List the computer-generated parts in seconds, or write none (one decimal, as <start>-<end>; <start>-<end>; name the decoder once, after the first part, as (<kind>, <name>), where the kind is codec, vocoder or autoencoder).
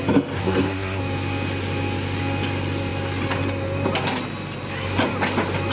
0.4-1.0 (codec, SNAC)